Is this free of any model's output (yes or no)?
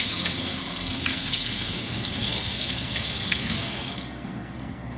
no